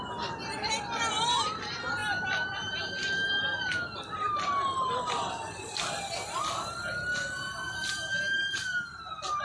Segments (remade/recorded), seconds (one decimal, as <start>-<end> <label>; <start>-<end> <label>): 0.0-9.4 recorded